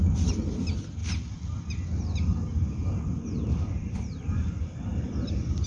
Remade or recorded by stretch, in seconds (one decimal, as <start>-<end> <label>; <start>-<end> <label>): 0.0-1.0 recorded; 1.0-2.0 remade; 2.0-2.8 recorded; 2.8-5.7 remade